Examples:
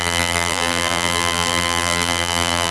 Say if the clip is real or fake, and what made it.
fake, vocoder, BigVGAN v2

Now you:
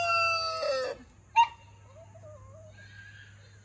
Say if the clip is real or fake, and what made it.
real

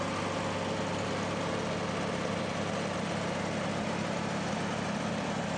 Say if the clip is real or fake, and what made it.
real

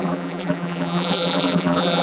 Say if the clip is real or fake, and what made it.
fake, vocoder, BigVGAN v2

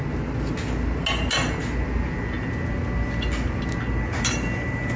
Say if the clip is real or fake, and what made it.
real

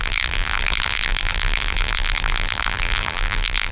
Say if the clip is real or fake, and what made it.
fake, vocoder, BigVGAN v2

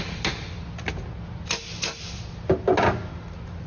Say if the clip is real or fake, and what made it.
real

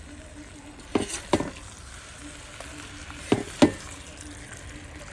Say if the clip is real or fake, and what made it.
real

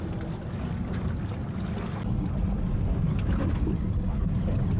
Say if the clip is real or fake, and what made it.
real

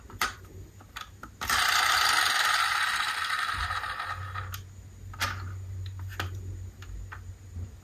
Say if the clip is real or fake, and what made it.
real